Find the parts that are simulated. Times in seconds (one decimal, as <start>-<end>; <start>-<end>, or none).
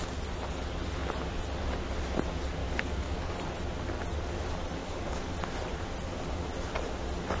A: 2.6-3.3; 4.8-5.3